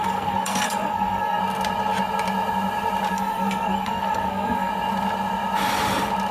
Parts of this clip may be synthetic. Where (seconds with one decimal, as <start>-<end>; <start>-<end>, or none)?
0.0-1.4; 3.1-4.7